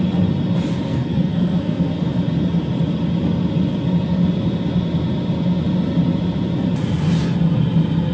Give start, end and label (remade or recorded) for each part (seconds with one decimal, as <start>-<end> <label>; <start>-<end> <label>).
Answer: 0.0-0.9 recorded; 0.9-1.9 remade; 1.9-8.1 recorded